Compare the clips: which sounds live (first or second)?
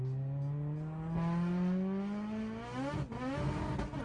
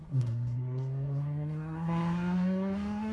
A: first